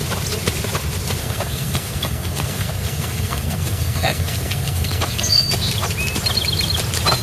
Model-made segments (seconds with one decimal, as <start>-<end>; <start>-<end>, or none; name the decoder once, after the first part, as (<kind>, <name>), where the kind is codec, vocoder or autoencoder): 1.2-5.5 (codec, SNAC)

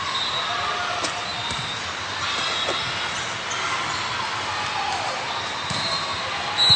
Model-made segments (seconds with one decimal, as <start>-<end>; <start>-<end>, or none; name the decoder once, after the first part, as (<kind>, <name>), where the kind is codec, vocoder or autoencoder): 6.1-6.8 (vocoder, BigVGAN v2)

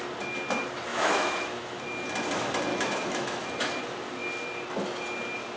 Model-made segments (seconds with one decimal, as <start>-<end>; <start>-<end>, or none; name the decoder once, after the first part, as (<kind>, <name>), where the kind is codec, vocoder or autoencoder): 0.9-1.8 (autoencoder, DAC-VAE); 2.7-3.8

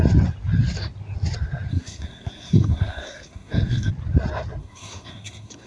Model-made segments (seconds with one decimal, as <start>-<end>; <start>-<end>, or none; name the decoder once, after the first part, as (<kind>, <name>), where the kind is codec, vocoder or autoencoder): 1.7-3.9 (codec, SNAC); 4.6-5.7

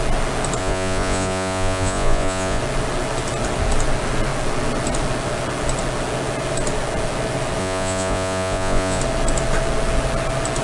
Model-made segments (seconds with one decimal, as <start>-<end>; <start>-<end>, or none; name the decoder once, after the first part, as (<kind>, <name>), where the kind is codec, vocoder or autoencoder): 0.6-2.6 (vocoder, Vocos); 7.6-9.0

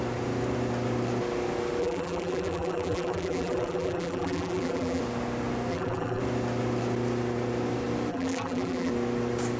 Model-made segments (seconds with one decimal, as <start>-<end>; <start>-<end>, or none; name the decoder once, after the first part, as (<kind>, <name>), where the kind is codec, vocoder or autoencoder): 1.8-5.0 (vocoder, BigVGAN v2); 5.7-6.2; 8.1-8.9